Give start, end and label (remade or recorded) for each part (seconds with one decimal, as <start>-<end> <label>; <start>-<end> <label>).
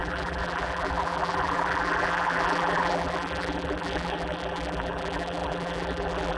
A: 0.0-6.4 remade